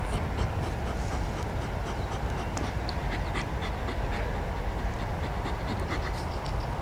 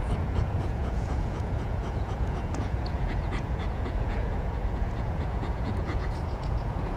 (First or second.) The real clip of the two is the first